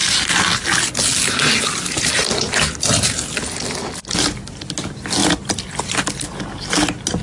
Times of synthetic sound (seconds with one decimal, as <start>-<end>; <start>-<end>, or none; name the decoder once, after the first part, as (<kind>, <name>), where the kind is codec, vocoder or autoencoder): none